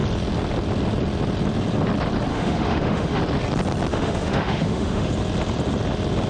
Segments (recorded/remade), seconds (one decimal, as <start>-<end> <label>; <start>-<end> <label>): 0.0-2.3 recorded; 2.3-3.2 remade; 3.2-3.9 recorded; 3.9-5.1 remade; 5.1-6.3 recorded